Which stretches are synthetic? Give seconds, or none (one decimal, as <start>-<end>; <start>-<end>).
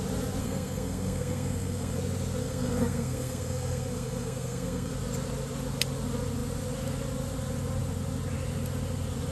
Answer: 0.4-2.0; 2.4-4.9